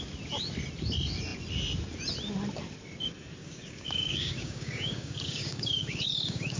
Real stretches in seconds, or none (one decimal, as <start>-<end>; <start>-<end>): 0.0-3.4

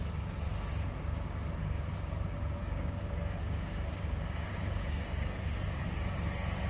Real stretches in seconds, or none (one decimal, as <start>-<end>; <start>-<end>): 0.0-2.6

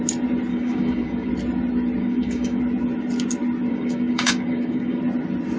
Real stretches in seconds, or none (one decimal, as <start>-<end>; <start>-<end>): 0.0-0.5; 1.3-2.0; 2.6-3.7; 5.0-5.6

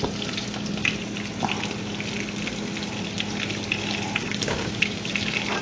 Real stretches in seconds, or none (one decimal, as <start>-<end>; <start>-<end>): 0.0-4.2; 5.1-5.6

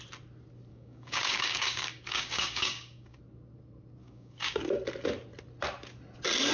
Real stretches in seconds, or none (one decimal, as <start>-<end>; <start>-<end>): 0.0-0.7; 3.2-4.0; 4.6-6.5